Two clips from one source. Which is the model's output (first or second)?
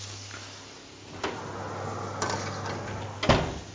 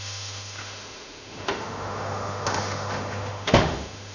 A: second